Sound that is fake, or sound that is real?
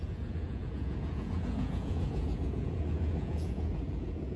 fake